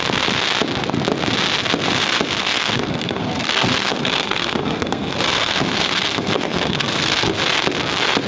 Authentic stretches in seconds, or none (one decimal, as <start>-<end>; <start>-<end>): 0.0-2.4; 7.4-8.3